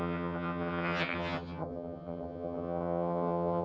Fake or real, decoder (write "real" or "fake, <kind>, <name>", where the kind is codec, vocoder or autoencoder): fake, vocoder, HiFi-GAN